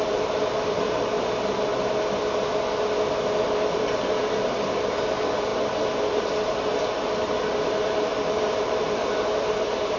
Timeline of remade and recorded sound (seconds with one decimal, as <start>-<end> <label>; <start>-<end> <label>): 0.0-1.7 remade; 1.7-3.7 recorded; 3.7-6.7 remade; 6.7-7.6 recorded; 7.6-10.0 remade